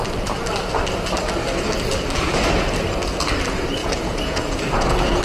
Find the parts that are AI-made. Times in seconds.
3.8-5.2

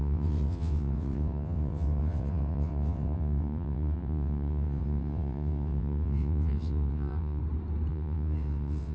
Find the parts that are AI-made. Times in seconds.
0.0-7.4; 7.9-8.9